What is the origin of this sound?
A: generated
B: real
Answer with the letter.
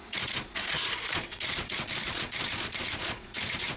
A